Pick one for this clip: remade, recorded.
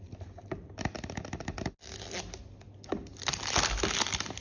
recorded